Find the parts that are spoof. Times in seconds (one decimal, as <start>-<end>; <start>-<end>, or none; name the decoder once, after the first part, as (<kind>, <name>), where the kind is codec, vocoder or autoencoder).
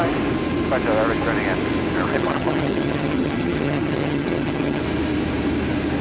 2.1-4.8 (vocoder, HiFi-GAN)